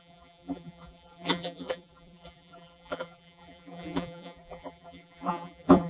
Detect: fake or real fake